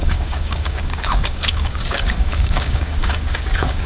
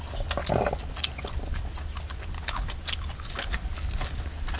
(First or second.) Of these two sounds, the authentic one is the second